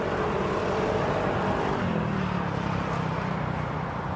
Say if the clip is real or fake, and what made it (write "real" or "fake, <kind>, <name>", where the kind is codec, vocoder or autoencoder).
fake, vocoder, BigVGAN v2